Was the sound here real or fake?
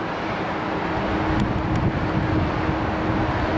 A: real